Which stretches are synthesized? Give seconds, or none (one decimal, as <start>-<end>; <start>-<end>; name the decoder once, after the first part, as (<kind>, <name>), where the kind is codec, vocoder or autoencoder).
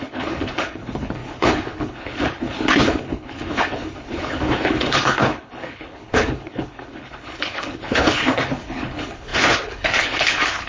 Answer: 0.0-10.7 (codec, HILCodec)